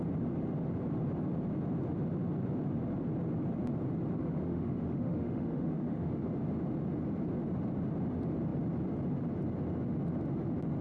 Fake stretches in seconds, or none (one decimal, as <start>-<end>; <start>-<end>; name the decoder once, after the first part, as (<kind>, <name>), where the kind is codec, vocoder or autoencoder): 4.2-6.2 (autoencoder, DAC-VAE)